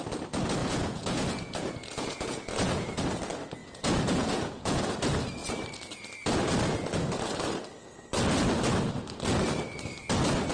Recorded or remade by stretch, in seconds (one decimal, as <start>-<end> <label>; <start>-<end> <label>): 0.0-0.6 recorded; 0.6-3.0 remade; 3.0-3.6 recorded; 3.6-4.8 remade; 4.8-10.5 recorded

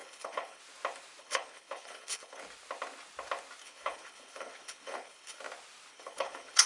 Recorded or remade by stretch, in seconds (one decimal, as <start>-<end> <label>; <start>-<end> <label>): 0.0-0.6 remade; 0.6-1.2 recorded; 1.2-2.4 remade; 2.4-3.6 recorded; 3.6-5.4 remade; 5.4-5.9 recorded; 5.9-6.7 remade